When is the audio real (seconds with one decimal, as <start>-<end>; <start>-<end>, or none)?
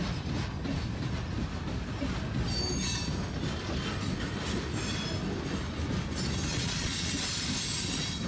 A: 0.0-6.5; 7.1-8.3